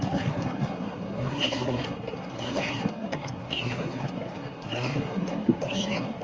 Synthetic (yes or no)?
yes